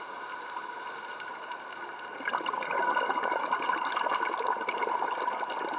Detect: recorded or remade recorded